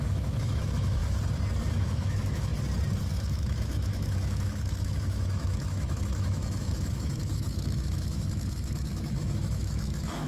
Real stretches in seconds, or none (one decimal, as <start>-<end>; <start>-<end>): 1.0-1.7; 2.5-3.1